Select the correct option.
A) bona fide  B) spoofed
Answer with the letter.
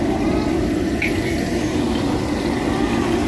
A